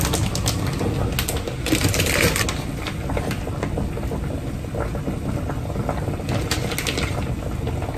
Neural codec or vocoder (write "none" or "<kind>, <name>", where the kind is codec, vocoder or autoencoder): none